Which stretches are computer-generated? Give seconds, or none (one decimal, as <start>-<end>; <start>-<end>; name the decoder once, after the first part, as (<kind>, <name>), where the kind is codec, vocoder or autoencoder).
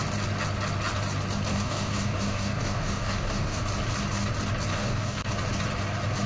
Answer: 1.5-3.6 (codec, DAC); 4.7-5.3